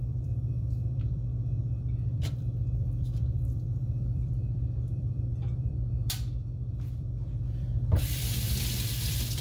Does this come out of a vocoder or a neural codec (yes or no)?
yes